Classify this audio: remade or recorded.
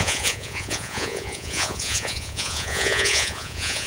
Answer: remade